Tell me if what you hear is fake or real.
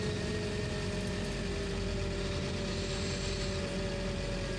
real